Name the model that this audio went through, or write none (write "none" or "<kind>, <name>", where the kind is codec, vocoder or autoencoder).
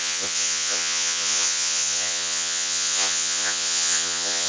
vocoder, Vocos